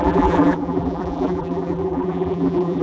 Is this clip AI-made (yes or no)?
yes